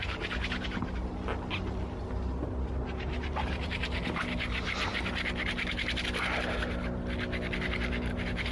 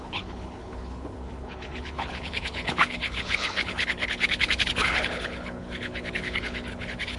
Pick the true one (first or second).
first